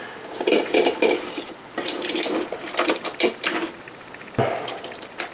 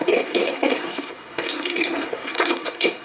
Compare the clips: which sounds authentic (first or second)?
first